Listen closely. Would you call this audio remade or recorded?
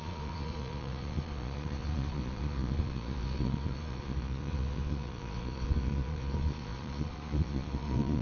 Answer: remade